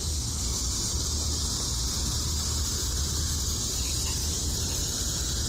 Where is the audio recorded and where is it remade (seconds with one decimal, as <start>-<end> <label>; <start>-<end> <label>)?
0.0-4.2 recorded; 4.2-5.0 remade; 5.0-5.5 recorded